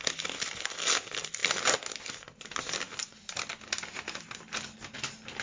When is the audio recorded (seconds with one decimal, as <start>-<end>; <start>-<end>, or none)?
0.0-5.4